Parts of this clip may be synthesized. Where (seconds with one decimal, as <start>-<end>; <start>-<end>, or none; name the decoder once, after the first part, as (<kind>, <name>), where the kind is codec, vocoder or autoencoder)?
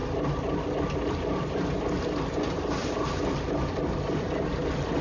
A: none